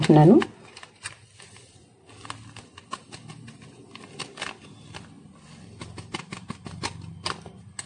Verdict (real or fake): real